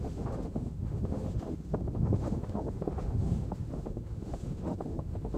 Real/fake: fake